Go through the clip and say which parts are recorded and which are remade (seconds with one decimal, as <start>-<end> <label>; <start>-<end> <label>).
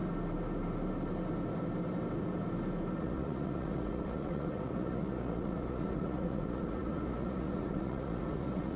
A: 0.0-3.0 recorded; 3.0-8.8 remade